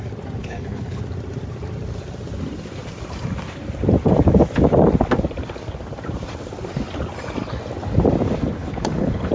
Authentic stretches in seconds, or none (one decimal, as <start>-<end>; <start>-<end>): 0.0-0.4; 1.0-8.6